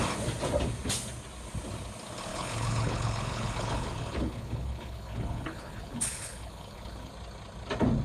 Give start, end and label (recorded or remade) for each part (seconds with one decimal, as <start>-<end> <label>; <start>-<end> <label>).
0.0-2.3 recorded; 2.3-7.1 remade; 7.1-8.0 recorded